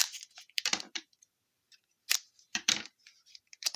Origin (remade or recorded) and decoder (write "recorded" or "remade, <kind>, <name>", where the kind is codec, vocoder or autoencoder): remade, vocoder, BigVGAN v2